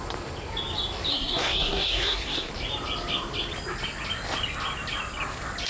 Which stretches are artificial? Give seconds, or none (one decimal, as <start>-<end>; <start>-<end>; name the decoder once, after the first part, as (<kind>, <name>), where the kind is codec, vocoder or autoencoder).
1.1-2.5 (codec, SNAC)